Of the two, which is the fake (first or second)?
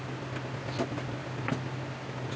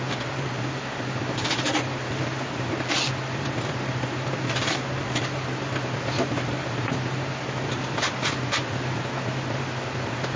second